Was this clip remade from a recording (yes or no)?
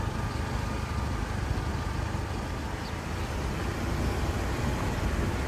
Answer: no